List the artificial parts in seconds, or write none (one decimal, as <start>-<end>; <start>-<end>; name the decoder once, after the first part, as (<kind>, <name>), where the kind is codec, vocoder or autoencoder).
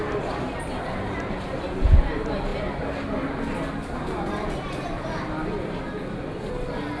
none